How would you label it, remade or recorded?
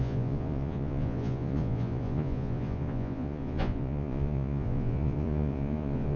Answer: remade